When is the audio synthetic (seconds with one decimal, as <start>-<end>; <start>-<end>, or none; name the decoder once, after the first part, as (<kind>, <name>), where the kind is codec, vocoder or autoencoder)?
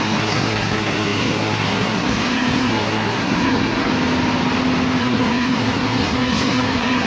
0.0-3.9 (codec, SNAC); 5.0-7.1